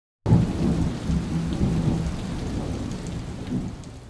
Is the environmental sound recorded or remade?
recorded